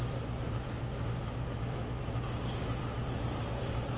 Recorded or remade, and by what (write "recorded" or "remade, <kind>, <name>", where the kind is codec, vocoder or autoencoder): recorded